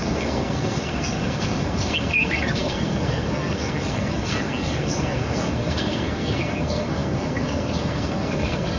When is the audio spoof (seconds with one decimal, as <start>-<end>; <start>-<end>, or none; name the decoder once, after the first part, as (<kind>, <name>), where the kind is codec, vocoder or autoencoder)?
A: 0.0-8.8 (codec, SNAC)